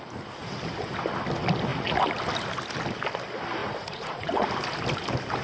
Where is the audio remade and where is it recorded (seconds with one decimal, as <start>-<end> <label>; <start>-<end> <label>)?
0.0-1.7 recorded; 1.7-2.2 remade; 2.2-3.6 recorded; 3.6-4.5 remade; 4.5-5.4 recorded